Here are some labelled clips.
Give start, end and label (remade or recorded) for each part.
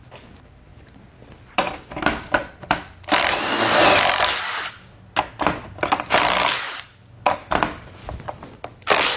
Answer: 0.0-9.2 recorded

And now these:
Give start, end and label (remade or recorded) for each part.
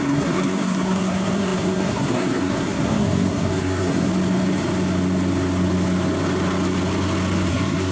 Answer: 0.0-4.1 remade; 4.1-7.5 recorded; 7.5-7.9 remade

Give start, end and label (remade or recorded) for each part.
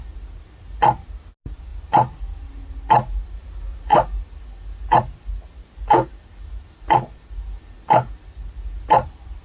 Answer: 0.0-9.4 recorded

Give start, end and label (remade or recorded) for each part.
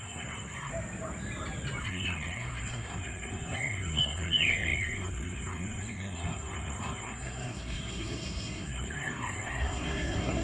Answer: 0.0-0.7 remade; 0.7-1.8 recorded; 1.8-10.4 remade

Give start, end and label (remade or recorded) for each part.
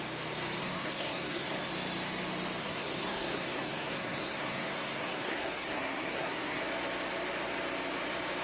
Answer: 0.0-0.6 recorded; 0.6-1.7 remade; 1.7-2.6 recorded; 2.6-6.6 remade; 6.6-8.4 recorded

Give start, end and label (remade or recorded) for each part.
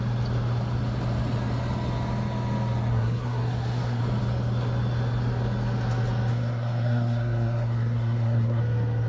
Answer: 0.0-2.9 recorded; 2.9-4.0 remade; 4.0-6.3 recorded; 6.3-8.6 remade; 8.6-9.1 recorded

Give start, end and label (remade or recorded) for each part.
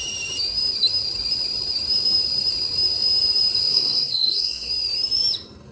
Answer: 0.0-3.7 recorded; 3.7-4.7 remade; 4.7-5.7 recorded